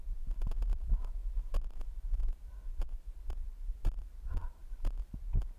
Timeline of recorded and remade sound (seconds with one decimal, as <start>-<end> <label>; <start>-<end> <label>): 0.0-1.2 remade; 1.2-2.0 recorded; 2.0-4.6 remade; 4.6-5.1 recorded; 5.1-5.6 remade